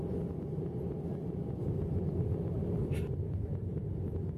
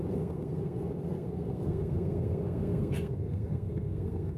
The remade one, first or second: second